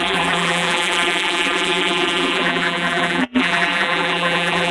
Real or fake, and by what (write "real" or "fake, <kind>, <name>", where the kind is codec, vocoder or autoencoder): fake, vocoder, BigVGAN v2